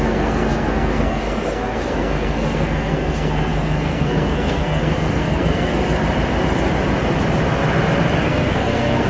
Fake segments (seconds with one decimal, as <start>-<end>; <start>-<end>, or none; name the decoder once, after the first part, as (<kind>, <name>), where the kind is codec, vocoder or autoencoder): 0.0-5.8 (codec, SNAC); 8.2-9.1